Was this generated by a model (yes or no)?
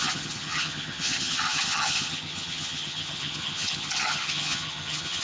yes